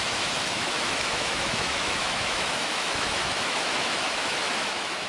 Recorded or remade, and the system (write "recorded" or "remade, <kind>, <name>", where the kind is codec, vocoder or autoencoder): remade, autoencoder, DAC-VAE